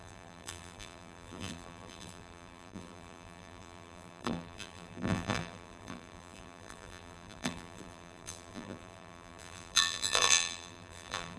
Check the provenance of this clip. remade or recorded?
remade